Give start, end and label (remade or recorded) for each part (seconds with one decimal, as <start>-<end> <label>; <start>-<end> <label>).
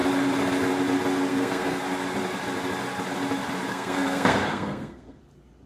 0.0-1.3 recorded; 1.3-1.8 remade; 1.8-3.7 recorded; 3.7-5.2 remade; 5.2-5.7 recorded